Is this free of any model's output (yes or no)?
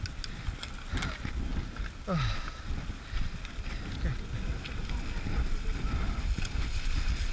yes